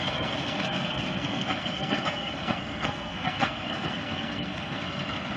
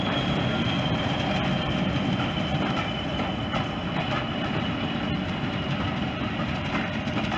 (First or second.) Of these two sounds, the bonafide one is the second